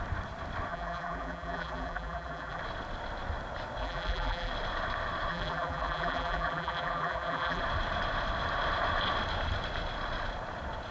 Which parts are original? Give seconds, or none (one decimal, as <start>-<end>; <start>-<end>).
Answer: 0.0-0.7; 2.6-3.8; 4.5-5.3; 7.6-10.9